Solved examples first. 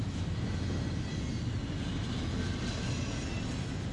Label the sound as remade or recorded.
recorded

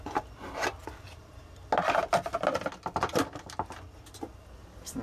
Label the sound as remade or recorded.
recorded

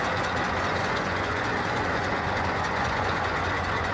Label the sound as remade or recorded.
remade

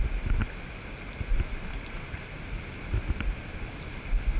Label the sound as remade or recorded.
recorded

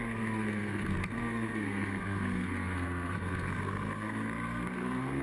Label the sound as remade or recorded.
remade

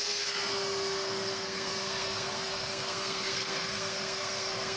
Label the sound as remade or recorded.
remade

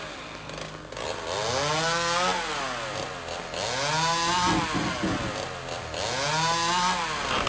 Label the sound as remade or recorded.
recorded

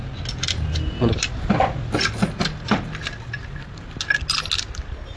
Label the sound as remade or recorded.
recorded